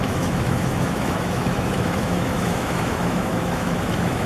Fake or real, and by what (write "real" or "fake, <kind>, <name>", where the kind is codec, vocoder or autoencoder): fake, autoencoder, DAC-VAE